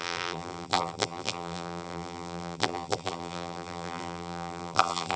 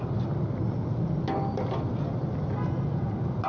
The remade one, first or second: first